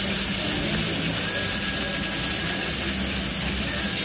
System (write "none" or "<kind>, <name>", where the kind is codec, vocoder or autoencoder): none